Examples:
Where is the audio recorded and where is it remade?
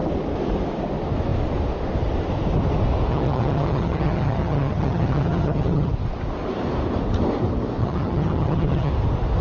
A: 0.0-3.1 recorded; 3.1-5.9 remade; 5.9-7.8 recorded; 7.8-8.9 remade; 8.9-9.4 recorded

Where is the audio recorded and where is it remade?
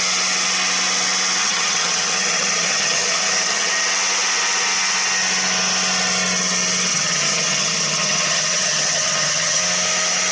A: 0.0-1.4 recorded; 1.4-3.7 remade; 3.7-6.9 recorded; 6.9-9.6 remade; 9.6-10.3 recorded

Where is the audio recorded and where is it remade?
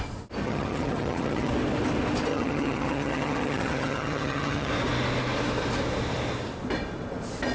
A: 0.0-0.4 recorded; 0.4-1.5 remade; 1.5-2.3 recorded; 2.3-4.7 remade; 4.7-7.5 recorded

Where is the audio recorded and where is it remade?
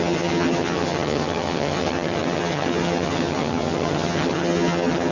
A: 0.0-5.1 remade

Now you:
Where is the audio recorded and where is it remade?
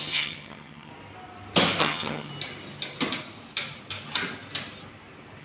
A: 0.0-0.9 remade; 0.9-1.8 recorded; 1.8-2.3 remade; 2.3-5.4 recorded